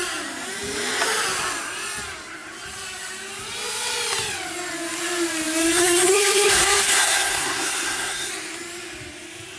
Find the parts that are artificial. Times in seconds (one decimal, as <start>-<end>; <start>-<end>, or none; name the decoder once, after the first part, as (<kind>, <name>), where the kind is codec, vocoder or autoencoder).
5.6-8.3 (codec, SNAC)